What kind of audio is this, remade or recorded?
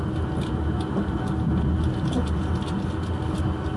recorded